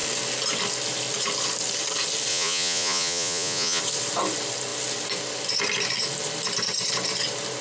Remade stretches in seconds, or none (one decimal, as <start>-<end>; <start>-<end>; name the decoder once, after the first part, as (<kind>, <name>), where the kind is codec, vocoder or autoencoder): 2.3-3.8 (vocoder, Vocos)